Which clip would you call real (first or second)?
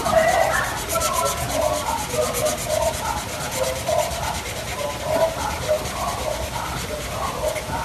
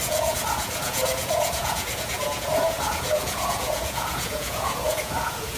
first